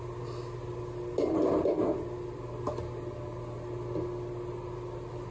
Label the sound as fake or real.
real